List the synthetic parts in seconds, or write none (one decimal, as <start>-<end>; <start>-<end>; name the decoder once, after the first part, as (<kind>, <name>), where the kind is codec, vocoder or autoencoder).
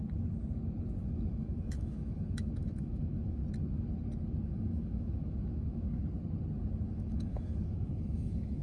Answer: 1.3-3.4 (autoencoder, DAC-VAE); 4.4-6.0; 6.9-8.6